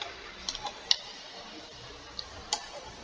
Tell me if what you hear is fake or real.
real